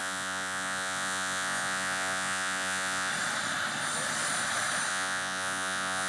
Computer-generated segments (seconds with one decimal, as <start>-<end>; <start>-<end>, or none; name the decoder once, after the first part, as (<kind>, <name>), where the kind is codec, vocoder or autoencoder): 0.0-3.1 (vocoder, Vocos); 4.9-6.1